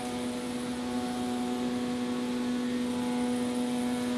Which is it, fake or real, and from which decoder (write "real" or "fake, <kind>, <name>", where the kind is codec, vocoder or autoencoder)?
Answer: real